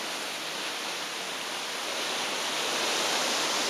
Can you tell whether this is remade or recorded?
recorded